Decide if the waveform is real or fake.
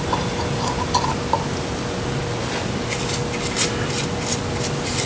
real